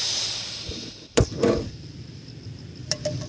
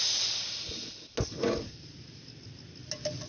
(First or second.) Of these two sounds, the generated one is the first